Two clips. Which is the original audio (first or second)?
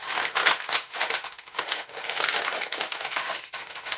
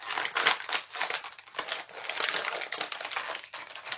second